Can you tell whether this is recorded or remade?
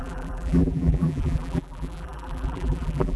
remade